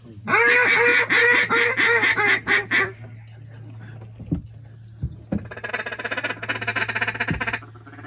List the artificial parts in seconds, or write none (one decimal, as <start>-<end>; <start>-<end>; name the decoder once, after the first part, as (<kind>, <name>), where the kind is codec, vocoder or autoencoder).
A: none